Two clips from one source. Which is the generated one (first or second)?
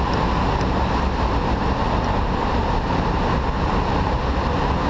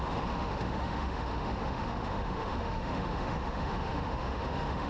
second